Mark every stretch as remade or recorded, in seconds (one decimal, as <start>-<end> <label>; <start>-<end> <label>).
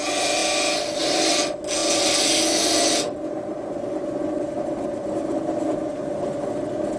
0.0-7.0 recorded